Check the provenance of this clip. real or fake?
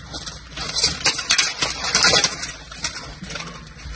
real